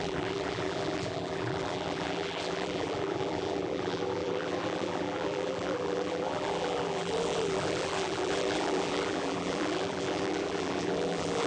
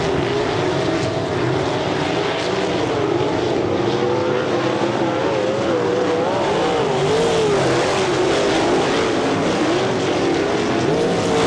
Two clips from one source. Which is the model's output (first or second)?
first